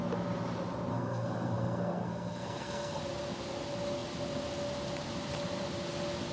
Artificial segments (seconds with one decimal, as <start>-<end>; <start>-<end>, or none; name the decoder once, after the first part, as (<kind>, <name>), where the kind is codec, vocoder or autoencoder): 0.9-3.0 (codec, SNAC)